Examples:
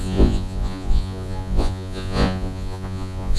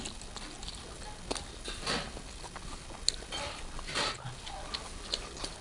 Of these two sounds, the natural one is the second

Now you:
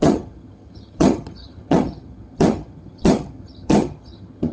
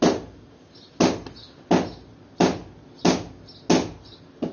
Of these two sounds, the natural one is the second